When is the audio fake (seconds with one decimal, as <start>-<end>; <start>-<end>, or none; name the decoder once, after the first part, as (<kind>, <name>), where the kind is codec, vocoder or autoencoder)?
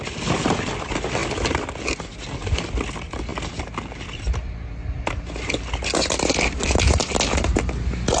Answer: none